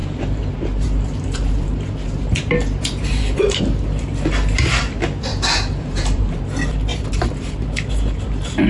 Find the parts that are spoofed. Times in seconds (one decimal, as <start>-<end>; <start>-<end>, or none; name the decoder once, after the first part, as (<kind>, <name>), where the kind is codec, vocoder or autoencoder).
0.0-3.6 (vocoder, BigVGAN v2); 5.3-6.4; 6.9-7.9